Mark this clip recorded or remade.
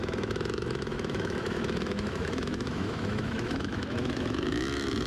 remade